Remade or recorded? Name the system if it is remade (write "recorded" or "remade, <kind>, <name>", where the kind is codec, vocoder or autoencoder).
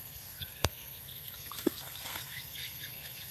remade, codec, SNAC